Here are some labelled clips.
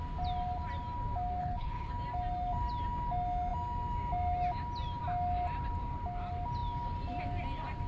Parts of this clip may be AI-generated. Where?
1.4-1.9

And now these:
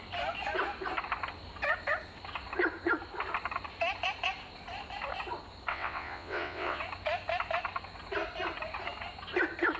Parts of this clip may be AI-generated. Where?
5.7-6.8

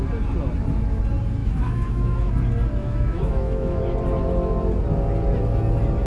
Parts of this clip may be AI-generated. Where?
1.4-2.3; 2.8-3.8

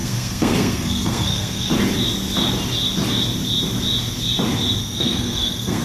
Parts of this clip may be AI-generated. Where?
0.0-1.7; 4.8-5.8

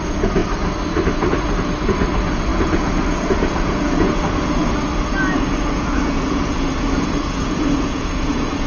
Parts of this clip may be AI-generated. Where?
0.0-0.4; 1.8-4.6; 5.6-8.7

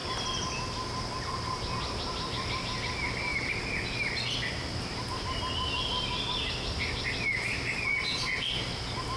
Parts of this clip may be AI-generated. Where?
none

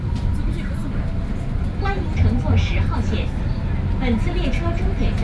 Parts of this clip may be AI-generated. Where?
none